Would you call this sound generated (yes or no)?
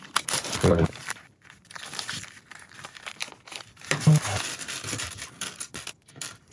yes